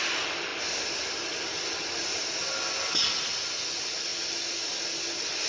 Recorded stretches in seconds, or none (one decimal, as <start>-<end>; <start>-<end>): 0.0-0.5; 2.3-5.5